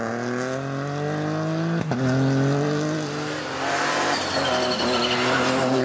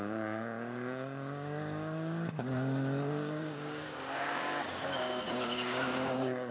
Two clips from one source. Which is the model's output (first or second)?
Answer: second